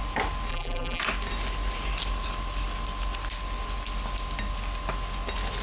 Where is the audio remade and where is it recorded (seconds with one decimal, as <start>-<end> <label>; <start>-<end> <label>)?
0.0-0.5 recorded; 0.5-1.0 remade; 1.0-5.6 recorded